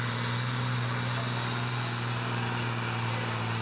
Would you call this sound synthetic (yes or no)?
no